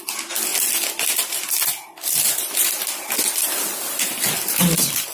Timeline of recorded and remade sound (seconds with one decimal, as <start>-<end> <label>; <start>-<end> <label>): 0.0-5.1 recorded